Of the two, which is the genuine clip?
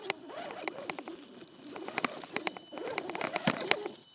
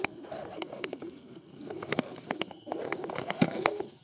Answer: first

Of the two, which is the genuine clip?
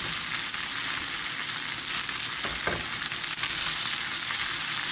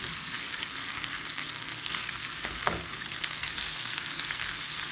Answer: first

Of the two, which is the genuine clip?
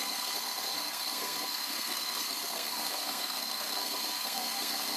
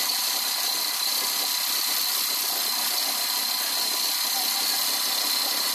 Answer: second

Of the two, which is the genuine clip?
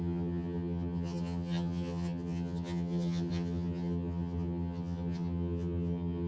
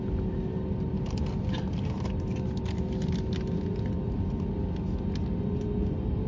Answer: second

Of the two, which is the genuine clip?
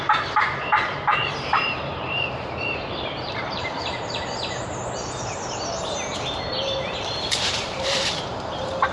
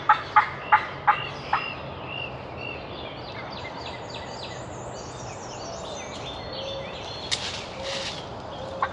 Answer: second